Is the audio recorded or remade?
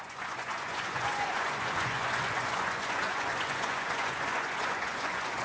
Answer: remade